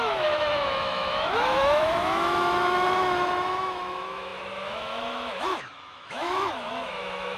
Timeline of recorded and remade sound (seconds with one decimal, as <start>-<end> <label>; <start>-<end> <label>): 0.0-7.4 remade